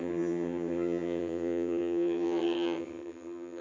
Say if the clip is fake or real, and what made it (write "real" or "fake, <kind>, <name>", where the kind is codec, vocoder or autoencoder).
fake, vocoder, HiFi-GAN